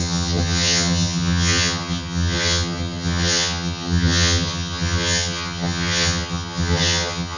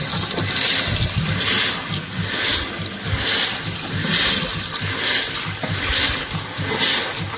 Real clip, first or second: second